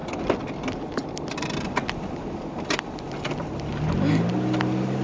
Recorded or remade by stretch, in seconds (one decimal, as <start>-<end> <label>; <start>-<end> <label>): 0.0-5.0 recorded